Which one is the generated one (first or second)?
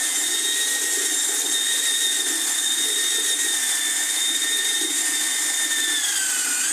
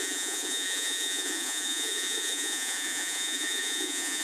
second